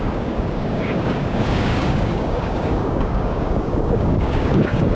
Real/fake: fake